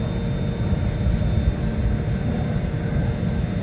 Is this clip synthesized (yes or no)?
no